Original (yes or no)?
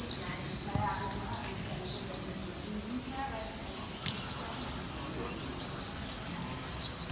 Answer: yes